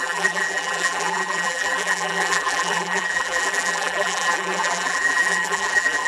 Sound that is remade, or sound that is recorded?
remade